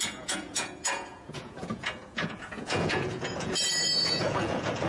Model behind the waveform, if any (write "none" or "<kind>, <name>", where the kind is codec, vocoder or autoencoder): vocoder, Vocos